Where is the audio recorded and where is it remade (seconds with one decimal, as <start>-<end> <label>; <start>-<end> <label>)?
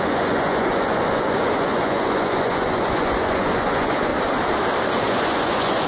0.0-4.1 remade; 4.1-4.9 recorded; 4.9-5.9 remade